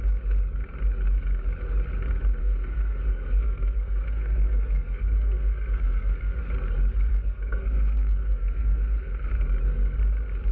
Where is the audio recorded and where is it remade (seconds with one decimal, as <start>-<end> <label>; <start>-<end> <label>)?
0.0-2.4 recorded; 2.4-6.4 remade; 6.4-7.1 recorded; 7.1-9.3 remade; 9.3-10.5 recorded